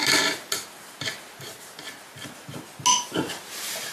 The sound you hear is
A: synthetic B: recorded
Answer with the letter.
B